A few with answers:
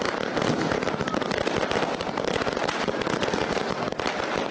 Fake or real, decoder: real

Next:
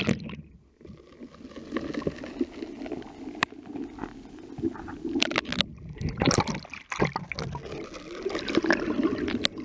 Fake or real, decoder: real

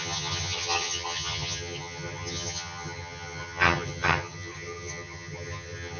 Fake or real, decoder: fake, vocoder, HiFi-GAN